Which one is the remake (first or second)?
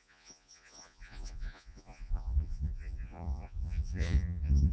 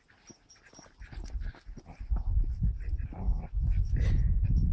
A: first